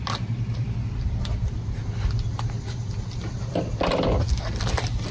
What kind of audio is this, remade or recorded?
recorded